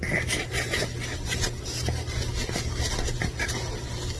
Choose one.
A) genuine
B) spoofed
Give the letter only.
A